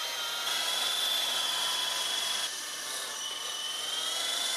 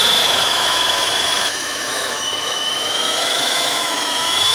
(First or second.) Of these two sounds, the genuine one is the first